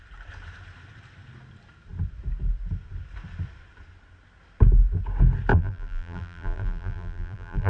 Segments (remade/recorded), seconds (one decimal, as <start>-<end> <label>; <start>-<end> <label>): 0.0-5.5 recorded; 5.5-7.7 remade